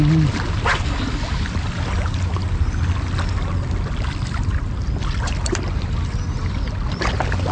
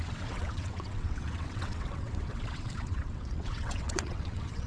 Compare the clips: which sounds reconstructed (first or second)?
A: second